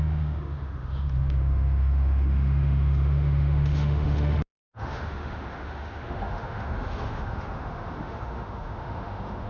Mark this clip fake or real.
fake